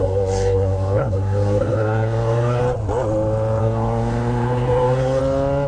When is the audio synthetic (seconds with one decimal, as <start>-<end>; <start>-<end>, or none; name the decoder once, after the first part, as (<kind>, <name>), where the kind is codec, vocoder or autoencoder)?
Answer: 0.0-2.6 (codec, SNAC); 3.6-5.2